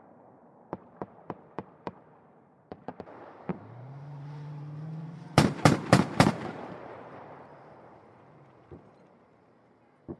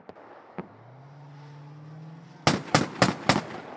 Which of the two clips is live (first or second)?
second